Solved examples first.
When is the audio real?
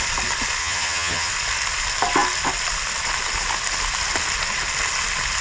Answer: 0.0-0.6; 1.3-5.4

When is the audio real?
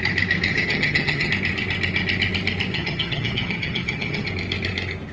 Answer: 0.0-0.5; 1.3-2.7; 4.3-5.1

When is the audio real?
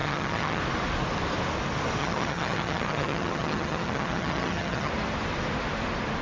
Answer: 0.6-2.0; 4.9-6.2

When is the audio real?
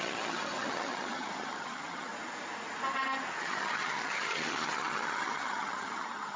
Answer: 2.1-3.4